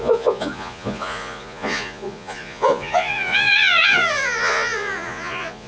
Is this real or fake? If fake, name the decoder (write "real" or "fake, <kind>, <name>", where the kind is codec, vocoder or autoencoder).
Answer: fake, vocoder, Vocos